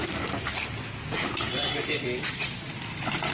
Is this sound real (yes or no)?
yes